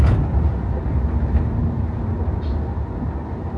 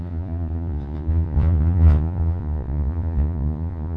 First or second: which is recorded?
first